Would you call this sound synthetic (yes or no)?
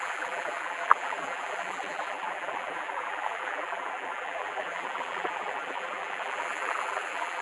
yes